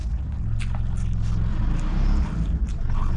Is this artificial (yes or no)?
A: no